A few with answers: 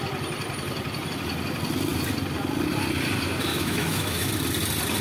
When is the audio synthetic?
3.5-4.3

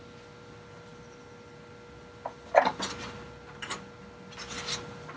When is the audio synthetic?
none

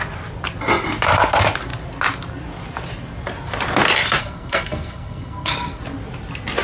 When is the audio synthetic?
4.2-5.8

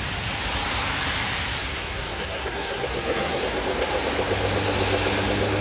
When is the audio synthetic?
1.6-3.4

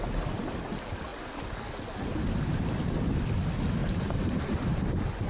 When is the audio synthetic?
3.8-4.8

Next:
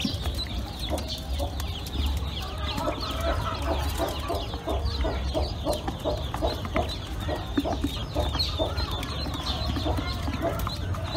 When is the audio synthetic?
none